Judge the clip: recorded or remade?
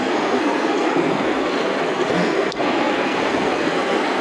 remade